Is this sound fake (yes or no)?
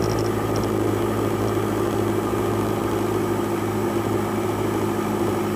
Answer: no